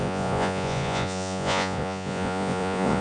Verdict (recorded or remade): remade